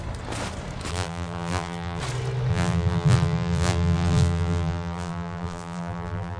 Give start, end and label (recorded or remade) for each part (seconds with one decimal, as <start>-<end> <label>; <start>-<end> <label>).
0.0-0.9 recorded; 0.9-2.0 remade; 2.0-2.5 recorded; 2.5-6.4 remade